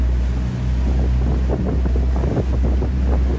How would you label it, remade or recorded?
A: recorded